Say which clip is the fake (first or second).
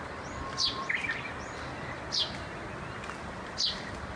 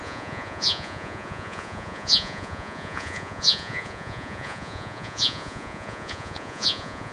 second